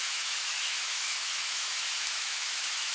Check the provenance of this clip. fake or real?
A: fake